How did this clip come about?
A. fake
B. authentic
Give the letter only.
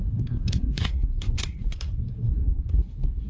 A